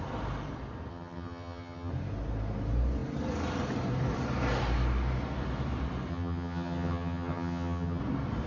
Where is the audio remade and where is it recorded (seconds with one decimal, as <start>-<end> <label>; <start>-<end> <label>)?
0.0-0.9 recorded; 0.9-1.9 remade; 1.9-6.1 recorded; 6.1-8.0 remade; 8.0-8.5 recorded